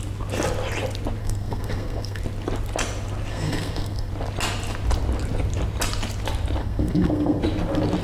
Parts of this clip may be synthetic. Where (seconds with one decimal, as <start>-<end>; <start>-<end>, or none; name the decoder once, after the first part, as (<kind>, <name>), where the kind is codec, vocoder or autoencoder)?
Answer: 1.2-2.2 (codec, SNAC); 3.3-4.1; 6.6-7.4